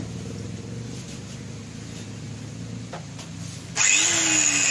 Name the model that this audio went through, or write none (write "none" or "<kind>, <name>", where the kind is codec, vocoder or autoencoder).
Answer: none